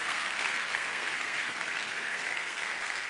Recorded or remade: remade